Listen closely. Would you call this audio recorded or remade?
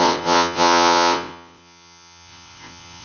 remade